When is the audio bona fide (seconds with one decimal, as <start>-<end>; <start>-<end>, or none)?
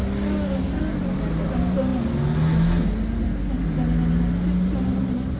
0.0-5.4